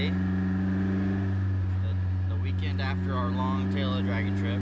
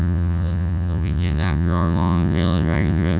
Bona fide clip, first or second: first